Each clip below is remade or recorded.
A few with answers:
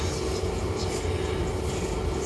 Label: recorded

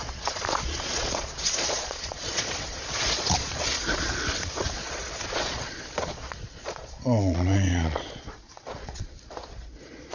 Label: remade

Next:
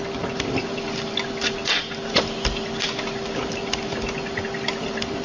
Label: recorded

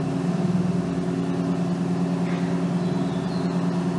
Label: recorded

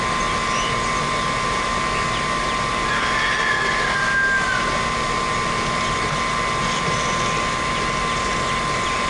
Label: recorded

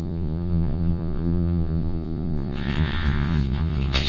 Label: remade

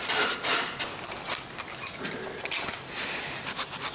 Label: recorded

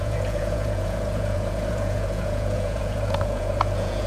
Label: remade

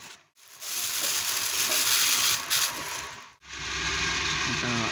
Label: recorded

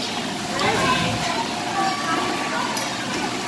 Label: recorded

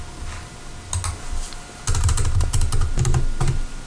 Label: recorded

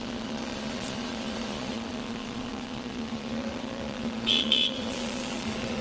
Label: remade